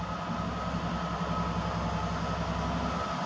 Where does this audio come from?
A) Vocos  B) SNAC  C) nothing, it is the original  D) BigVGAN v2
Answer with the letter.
C